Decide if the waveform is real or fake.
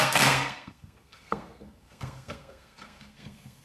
fake